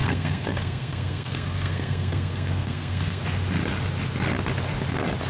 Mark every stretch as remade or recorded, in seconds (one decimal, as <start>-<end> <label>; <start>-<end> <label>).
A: 0.0-3.2 remade; 3.2-5.3 recorded